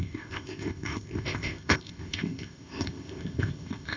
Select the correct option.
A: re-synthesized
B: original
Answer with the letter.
A